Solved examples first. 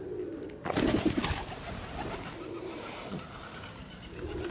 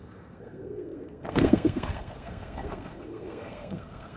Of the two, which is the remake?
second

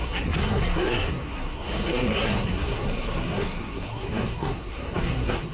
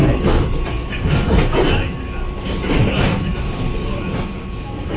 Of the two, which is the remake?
first